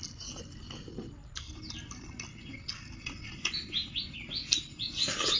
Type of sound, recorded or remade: recorded